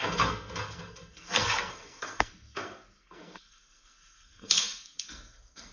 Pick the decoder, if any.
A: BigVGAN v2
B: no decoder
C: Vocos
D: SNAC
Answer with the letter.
D